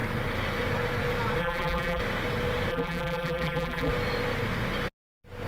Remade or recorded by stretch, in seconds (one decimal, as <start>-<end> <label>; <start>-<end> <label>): 0.0-1.4 recorded; 1.4-2.0 remade; 2.0-2.7 recorded; 2.7-3.9 remade; 3.9-5.5 recorded